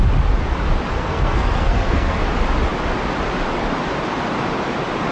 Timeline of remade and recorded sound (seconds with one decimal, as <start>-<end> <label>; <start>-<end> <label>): 0.0-0.9 recorded; 0.9-2.2 remade; 2.2-5.1 recorded